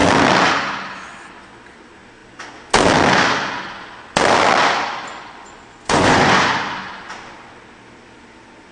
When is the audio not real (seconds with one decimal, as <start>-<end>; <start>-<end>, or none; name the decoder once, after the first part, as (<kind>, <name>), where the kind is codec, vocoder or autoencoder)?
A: 5.1-6.4 (vocoder, Vocos)